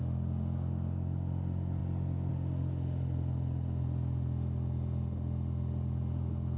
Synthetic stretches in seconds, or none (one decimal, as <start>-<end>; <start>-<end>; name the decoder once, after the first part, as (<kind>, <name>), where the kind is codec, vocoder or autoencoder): none